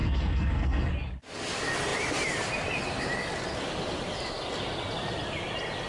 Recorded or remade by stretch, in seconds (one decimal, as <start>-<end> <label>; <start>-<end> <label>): 0.0-0.9 remade; 0.9-5.9 recorded